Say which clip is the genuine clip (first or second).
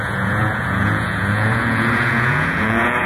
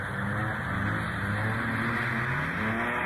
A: second